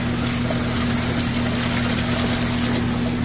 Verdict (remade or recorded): recorded